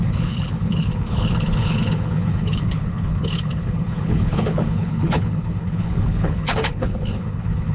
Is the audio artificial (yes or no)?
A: yes